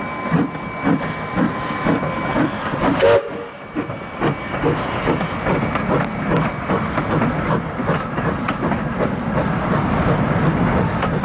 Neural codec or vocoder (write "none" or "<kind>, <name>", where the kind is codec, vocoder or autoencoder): none